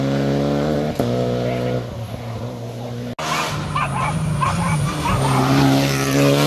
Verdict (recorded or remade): recorded